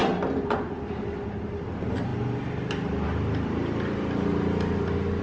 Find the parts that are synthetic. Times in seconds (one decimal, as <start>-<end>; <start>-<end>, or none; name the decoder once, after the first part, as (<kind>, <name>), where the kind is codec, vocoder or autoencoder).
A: none